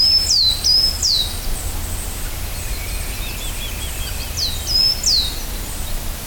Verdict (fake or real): real